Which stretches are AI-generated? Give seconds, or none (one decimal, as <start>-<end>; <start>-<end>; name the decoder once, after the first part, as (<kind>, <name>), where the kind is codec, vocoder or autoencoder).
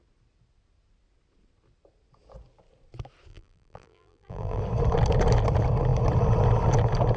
3.3-4.6 (vocoder, BigVGAN v2)